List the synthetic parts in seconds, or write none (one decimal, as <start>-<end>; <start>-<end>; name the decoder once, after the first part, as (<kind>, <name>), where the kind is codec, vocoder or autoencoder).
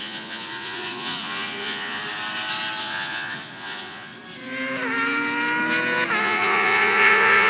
0.0-2.0 (vocoder, Vocos); 2.8-4.1; 6.2-7.5